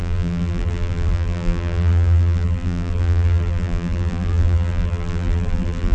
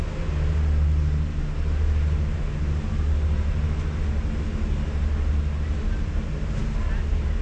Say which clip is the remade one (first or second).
first